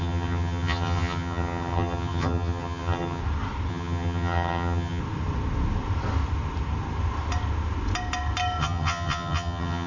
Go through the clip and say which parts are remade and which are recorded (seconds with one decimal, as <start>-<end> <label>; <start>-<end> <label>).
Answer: 0.0-3.2 remade; 3.2-3.7 recorded; 3.7-5.0 remade; 5.0-8.6 recorded; 8.6-9.9 remade